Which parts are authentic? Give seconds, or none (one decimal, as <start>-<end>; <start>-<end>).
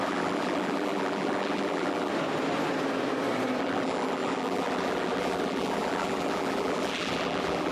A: 2.1-3.6